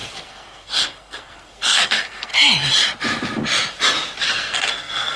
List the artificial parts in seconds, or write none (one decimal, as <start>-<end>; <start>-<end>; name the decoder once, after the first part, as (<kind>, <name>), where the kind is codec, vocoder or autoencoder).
0.0-2.3 (codec, SNAC); 4.2-5.2